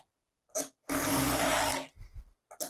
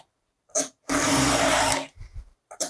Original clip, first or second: first